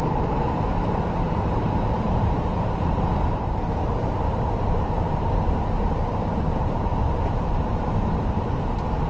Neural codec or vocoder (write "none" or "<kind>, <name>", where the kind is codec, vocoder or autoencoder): vocoder, BigVGAN v2